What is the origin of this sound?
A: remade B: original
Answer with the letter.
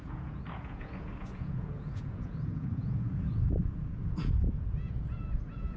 A